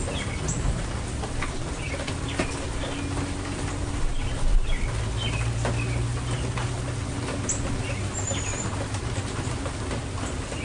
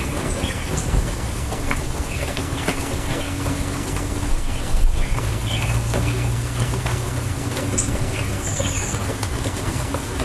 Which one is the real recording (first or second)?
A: first